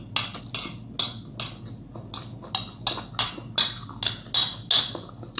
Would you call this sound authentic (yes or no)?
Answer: yes